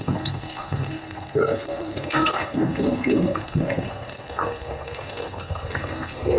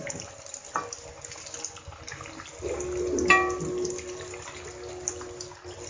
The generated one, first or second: first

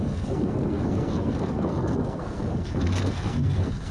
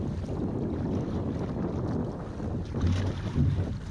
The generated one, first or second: first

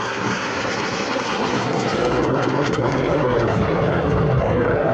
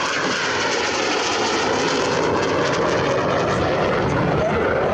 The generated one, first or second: first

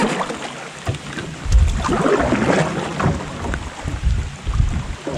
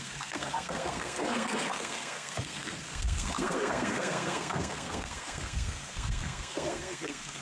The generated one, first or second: second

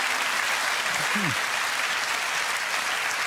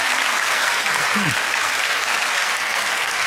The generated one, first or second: second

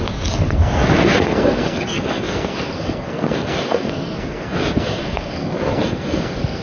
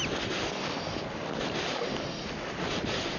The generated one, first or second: first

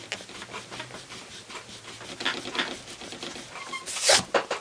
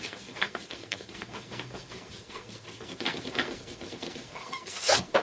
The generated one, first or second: second